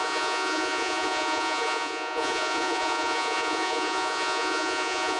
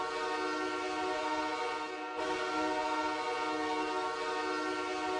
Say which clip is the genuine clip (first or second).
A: second